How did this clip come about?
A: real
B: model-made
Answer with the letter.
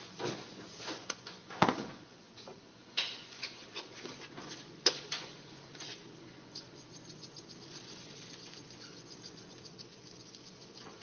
B